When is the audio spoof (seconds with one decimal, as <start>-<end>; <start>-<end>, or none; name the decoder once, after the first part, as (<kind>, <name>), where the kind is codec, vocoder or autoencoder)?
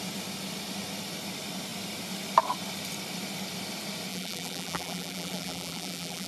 4.1-6.3 (vocoder, BigVGAN v2)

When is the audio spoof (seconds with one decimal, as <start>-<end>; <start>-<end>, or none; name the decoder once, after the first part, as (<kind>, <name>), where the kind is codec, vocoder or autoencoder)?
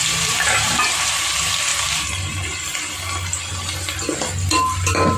none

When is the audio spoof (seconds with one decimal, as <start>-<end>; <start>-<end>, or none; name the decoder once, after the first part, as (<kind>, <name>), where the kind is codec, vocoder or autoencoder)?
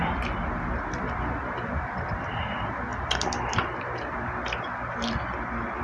0.0-2.5 (vocoder, BigVGAN v2); 2.9-4.6